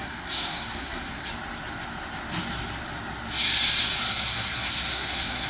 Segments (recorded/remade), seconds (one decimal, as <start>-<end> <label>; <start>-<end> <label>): 0.0-1.3 remade; 1.3-4.0 recorded; 4.0-5.5 remade